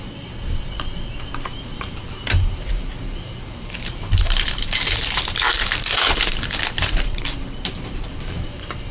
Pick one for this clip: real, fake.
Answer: fake